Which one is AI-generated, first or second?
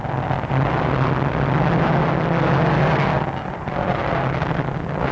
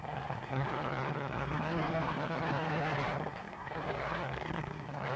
second